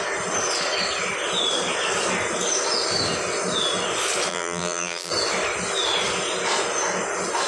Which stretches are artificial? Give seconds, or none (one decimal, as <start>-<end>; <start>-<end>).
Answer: 4.3-5.1